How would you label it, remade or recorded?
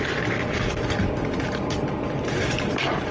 remade